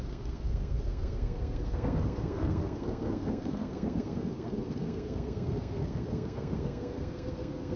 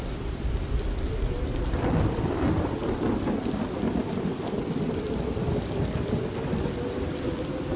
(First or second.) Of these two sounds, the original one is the second